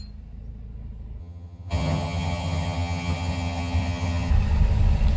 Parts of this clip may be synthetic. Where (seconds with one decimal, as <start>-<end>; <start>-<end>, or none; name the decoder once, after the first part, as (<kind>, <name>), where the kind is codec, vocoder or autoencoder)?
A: 1.2-4.3 (vocoder, HiFi-GAN)